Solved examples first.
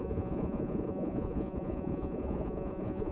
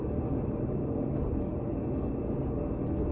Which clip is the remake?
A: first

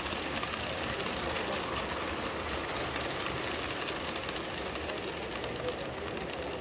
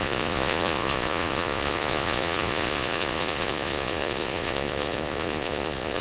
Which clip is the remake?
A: second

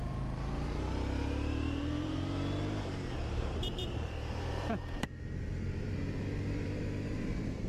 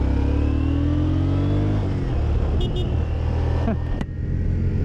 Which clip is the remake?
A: first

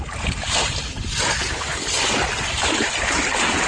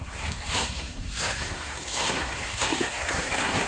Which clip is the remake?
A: second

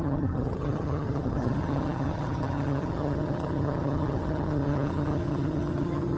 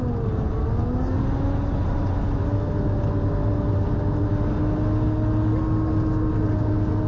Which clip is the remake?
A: first